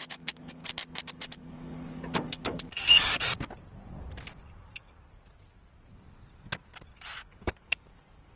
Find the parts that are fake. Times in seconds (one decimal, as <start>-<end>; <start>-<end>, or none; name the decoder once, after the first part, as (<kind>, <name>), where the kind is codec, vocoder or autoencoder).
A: 0.0-0.6 (codec, DAC); 1.1-3.3; 7.3-8.4